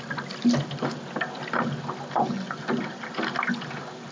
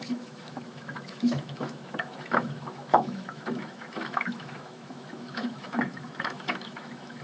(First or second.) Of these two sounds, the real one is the first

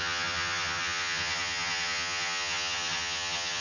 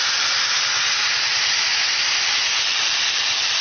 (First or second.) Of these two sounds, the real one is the second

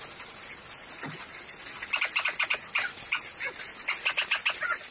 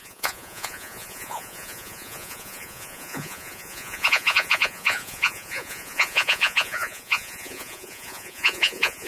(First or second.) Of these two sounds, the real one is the first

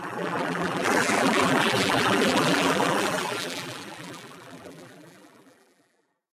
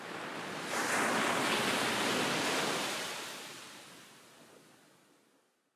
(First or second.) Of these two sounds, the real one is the second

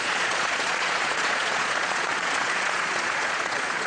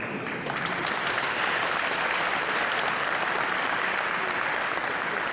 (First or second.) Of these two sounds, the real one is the second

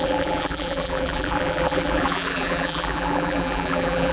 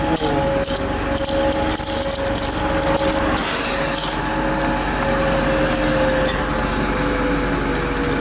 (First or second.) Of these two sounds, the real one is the second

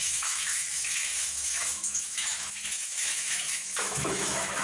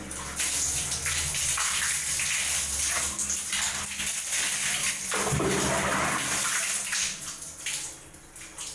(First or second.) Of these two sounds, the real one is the second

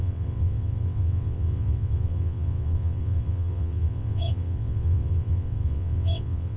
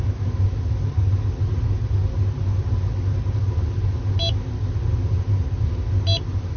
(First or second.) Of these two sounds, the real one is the second